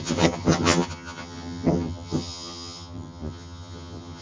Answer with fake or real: fake